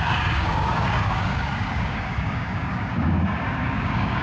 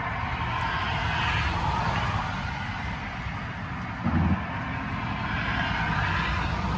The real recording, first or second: second